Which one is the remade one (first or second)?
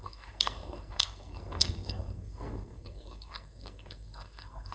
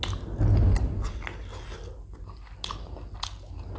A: first